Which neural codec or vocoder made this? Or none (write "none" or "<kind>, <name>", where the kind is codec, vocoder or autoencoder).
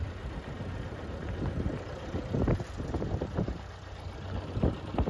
none